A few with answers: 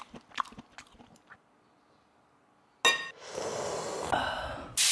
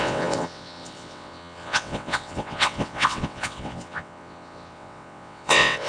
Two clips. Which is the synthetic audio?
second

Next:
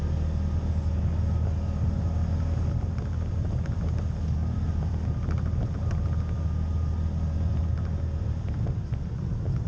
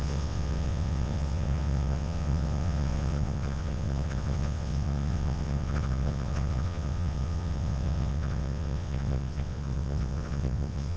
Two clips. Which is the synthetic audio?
second